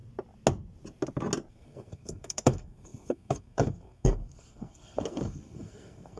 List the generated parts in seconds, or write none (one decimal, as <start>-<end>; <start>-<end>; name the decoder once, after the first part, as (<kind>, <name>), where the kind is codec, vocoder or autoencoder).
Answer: 1.5-6.2 (codec, SNAC)